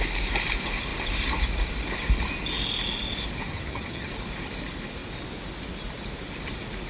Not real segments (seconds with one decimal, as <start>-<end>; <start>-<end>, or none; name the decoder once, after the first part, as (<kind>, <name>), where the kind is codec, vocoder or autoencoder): 3.5-4.1 (vocoder, HiFi-GAN)